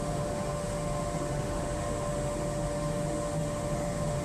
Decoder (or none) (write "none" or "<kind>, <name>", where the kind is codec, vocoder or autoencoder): autoencoder, DAC-VAE